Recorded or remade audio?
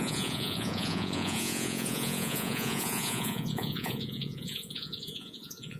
remade